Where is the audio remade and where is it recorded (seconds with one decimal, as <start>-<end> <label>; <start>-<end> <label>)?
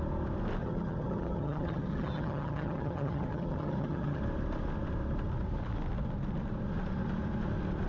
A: 0.0-0.6 recorded; 0.6-4.2 remade; 4.2-7.9 recorded